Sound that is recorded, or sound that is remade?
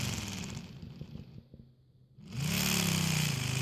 recorded